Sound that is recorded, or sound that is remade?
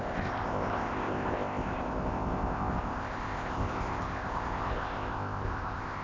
remade